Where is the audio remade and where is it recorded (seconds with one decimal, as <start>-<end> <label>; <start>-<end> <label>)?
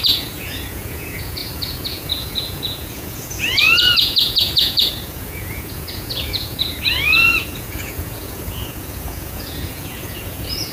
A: 0.0-10.7 remade